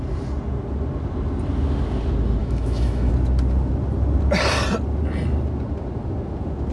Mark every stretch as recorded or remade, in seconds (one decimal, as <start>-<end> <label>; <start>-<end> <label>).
0.0-2.4 recorded; 2.4-3.1 remade; 3.1-6.7 recorded